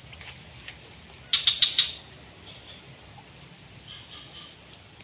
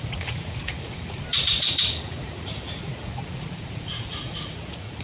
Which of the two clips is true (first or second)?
first